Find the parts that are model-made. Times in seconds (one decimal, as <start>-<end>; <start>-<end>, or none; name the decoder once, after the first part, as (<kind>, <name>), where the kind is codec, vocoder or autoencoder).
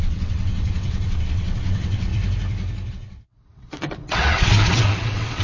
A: 0.0-2.1 (vocoder, WaveNeXt); 2.9-5.4